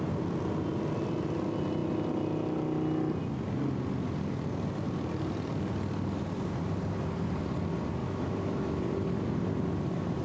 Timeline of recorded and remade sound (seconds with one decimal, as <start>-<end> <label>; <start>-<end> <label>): 0.0-8.0 recorded; 8.0-8.8 remade; 8.8-10.2 recorded